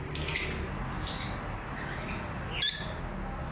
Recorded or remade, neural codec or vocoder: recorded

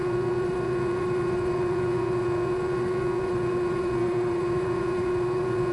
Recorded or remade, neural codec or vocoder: remade, vocoder, Vocos